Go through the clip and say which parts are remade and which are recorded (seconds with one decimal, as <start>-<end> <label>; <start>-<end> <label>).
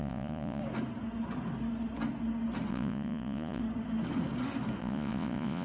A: 0.0-0.6 remade; 0.6-2.7 recorded; 2.7-3.6 remade; 3.6-4.8 recorded; 4.8-5.6 remade